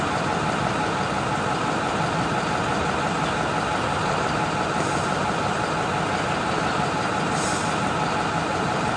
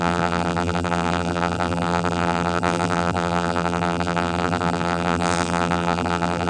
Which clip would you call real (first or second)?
first